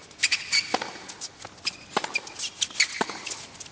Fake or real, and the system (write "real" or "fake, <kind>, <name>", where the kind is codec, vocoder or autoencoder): real